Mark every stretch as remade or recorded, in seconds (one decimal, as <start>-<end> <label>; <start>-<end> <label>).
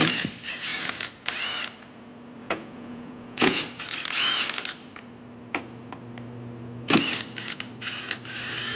0.0-2.4 recorded; 2.4-3.6 remade; 3.6-8.8 recorded